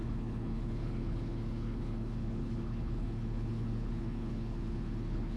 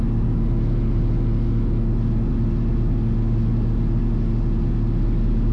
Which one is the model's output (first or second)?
first